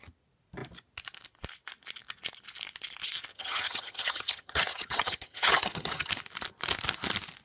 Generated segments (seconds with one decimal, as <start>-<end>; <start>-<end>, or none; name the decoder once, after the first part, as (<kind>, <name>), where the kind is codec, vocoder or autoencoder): 3.3-6.1 (vocoder, HiFi-GAN)